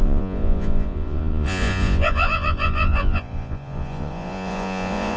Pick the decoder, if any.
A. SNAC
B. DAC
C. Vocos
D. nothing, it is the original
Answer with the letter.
C